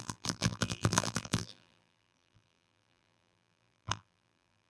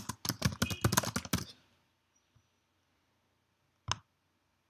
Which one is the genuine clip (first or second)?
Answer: second